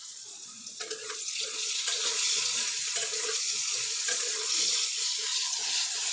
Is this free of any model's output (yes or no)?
no